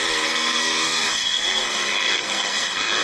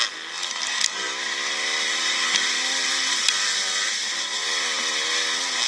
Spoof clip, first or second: first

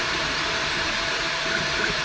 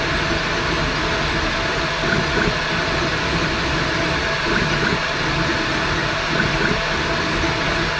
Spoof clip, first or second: first